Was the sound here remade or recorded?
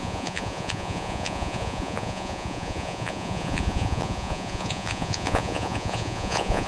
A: remade